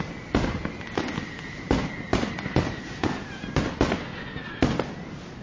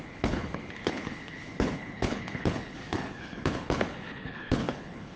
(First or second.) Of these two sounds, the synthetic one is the second